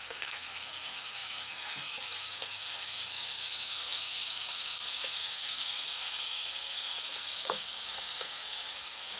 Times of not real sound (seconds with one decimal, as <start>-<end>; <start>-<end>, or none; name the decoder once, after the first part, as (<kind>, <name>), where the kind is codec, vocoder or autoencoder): 0.0-9.2 (codec, SNAC)

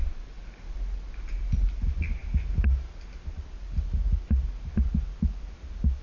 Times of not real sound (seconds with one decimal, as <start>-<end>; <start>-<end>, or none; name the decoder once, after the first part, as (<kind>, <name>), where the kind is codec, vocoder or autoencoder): none

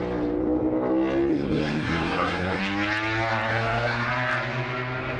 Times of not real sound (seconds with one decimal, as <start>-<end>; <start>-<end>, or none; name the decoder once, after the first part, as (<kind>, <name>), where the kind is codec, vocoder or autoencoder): 1.3-2.6 (codec, SNAC); 3.5-4.1